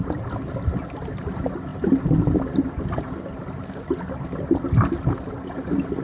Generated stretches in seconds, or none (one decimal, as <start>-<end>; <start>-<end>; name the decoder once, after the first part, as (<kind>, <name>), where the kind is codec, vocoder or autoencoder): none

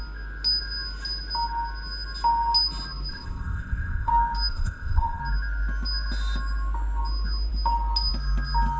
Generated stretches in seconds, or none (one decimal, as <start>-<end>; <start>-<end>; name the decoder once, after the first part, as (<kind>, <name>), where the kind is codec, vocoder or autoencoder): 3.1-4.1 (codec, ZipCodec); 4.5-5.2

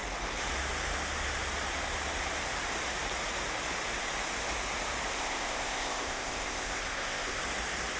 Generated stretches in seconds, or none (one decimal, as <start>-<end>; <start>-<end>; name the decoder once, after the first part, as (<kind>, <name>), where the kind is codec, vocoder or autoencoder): 5.1-7.4 (codec, ZipCodec)

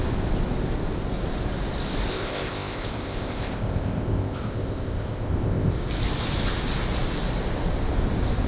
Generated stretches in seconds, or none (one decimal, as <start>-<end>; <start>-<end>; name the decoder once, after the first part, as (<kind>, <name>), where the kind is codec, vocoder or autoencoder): 2.1-5.7 (codec, ZipCodec)